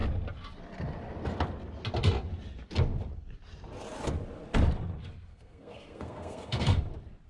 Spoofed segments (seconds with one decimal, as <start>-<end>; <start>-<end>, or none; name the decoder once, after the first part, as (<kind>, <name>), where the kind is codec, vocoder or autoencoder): 5.3-6.8 (codec, SNAC)